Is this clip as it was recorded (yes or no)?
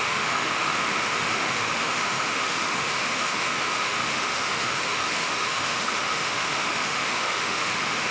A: no